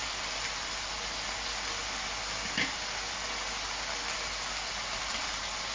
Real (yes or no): yes